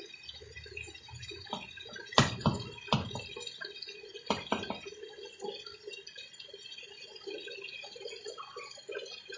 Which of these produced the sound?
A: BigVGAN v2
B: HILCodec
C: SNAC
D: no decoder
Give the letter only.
D